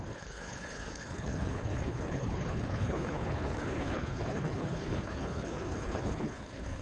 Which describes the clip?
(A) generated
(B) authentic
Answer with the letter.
A